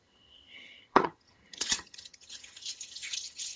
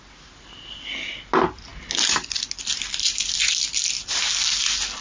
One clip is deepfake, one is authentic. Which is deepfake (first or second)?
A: first